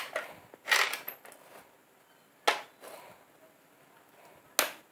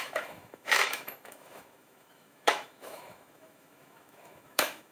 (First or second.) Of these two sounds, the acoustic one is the first